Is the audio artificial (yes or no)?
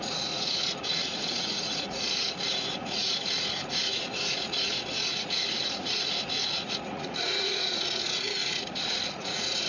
yes